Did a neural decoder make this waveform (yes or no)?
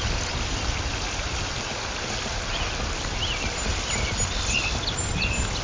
no